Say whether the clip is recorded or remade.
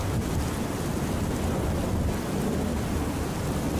recorded